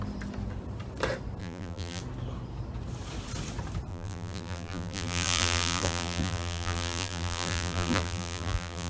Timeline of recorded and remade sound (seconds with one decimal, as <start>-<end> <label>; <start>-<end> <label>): 0.0-1.4 recorded; 1.4-2.0 remade; 2.0-3.9 recorded; 3.9-8.9 remade